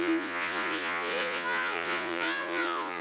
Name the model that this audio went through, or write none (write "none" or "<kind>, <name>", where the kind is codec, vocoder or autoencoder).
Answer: vocoder, Vocos